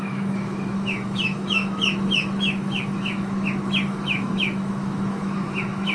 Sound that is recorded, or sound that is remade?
remade